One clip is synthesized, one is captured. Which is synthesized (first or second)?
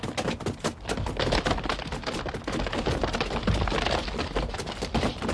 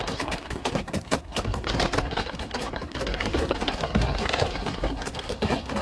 second